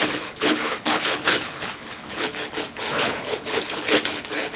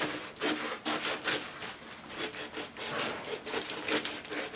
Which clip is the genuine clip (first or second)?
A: second